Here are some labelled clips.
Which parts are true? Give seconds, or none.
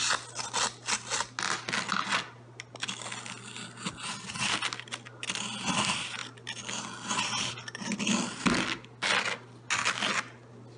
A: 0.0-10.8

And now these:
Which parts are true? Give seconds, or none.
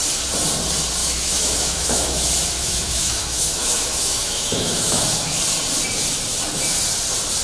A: 0.0-1.0; 5.4-7.4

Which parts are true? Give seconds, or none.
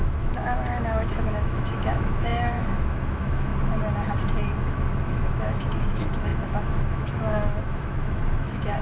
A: 3.5-5.0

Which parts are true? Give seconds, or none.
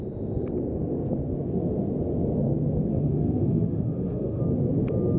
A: 0.0-2.9; 4.4-5.2